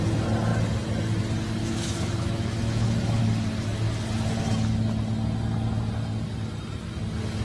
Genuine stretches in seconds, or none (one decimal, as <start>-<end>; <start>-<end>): 0.0-1.6; 3.2-7.4